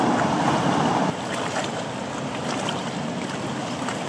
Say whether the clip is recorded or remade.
recorded